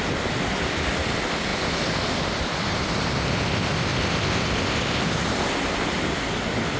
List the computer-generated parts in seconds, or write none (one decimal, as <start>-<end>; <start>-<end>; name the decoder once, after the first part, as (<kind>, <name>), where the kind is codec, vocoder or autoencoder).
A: none